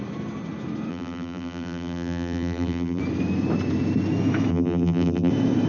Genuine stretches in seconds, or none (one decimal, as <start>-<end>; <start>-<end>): 0.0-0.9; 3.0-4.5; 5.3-5.7